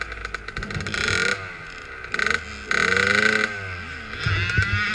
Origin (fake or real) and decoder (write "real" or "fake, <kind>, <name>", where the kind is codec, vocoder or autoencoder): real